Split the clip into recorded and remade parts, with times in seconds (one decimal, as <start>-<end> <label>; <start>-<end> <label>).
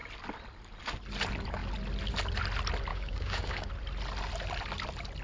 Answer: 0.0-2.9 recorded; 2.9-3.7 remade; 3.7-5.2 recorded